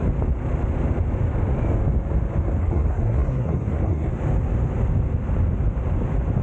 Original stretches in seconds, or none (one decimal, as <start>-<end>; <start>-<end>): 0.0-2.6; 4.1-6.4